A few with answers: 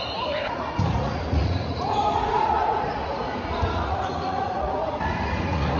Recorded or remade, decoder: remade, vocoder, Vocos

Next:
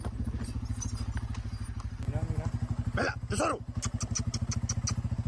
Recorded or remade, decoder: recorded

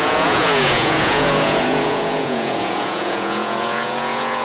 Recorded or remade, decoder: remade, vocoder, Vocos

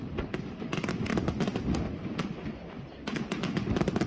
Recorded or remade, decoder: recorded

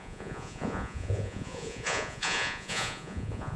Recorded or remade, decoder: remade, vocoder, Vocos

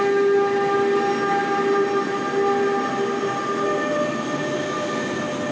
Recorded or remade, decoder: recorded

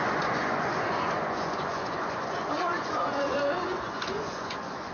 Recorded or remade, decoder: remade, vocoder, Vocos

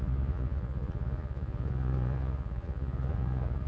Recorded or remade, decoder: remade, vocoder, Vocos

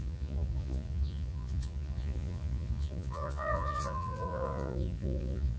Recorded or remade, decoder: remade, vocoder, Vocos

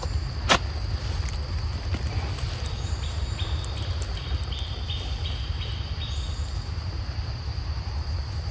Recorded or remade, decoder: recorded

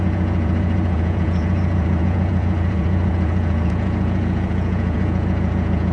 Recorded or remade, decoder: remade, vocoder, Vocos